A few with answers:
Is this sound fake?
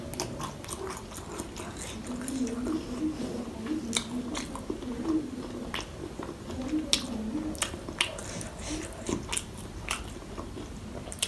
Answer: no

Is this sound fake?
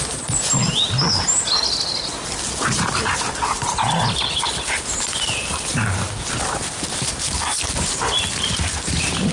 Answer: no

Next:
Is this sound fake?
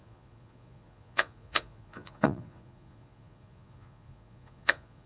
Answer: yes